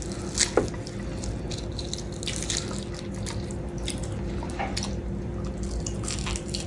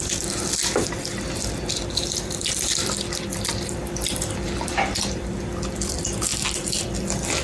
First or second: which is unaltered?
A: first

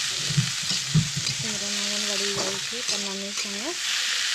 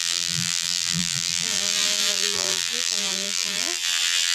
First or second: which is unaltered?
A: first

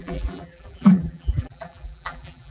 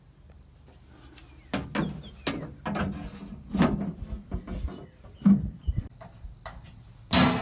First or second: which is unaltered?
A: second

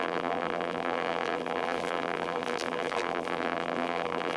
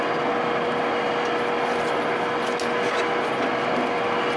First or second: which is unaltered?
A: second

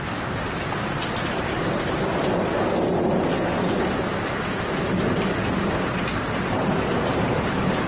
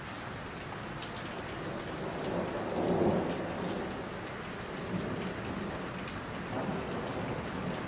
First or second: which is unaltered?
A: second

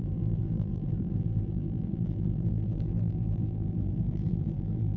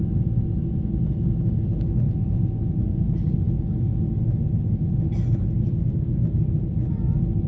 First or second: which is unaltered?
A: second